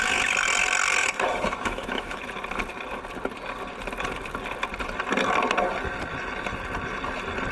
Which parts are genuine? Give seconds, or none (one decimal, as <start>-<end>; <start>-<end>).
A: 0.0-1.0; 2.2-7.5